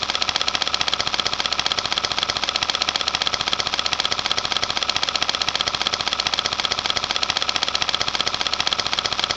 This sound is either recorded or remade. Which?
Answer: recorded